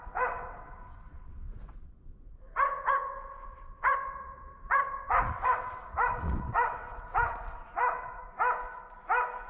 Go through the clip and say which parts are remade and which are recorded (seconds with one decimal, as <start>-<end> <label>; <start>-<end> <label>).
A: 0.0-8.2 remade; 8.2-9.5 recorded